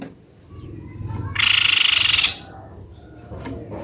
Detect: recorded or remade recorded